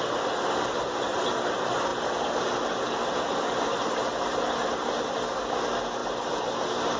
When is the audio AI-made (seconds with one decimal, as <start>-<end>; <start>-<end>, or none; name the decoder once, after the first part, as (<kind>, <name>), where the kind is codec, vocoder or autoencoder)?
none